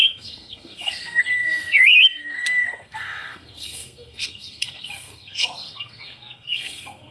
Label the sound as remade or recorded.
remade